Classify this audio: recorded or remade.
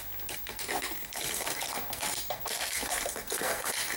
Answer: remade